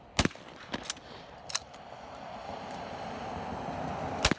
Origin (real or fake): real